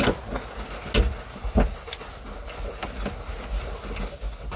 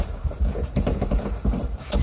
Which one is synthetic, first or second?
second